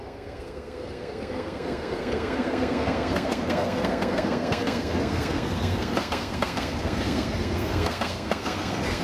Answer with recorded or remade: remade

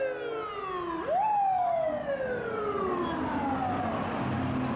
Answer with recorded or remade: recorded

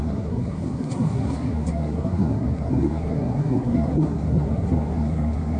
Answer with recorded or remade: remade